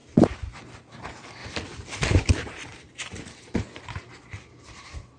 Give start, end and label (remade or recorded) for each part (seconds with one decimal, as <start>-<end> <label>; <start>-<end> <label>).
0.0-0.8 recorded; 0.8-1.4 remade; 1.4-2.3 recorded; 2.3-5.2 remade